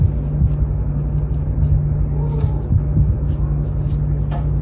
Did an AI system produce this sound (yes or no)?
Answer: no